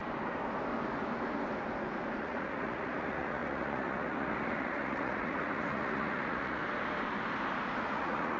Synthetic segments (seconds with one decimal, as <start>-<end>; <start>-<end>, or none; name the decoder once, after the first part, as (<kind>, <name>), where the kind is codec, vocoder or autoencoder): 2.2-6.6 (vocoder, Vocos); 7.8-8.4